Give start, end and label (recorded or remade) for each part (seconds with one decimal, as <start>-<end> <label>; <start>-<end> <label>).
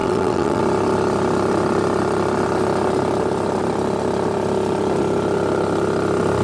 0.0-0.6 remade; 0.6-6.4 recorded